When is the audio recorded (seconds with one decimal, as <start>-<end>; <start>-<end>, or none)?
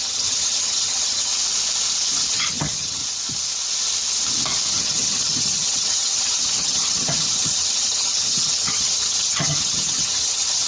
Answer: 1.3-2.3; 3.0-4.7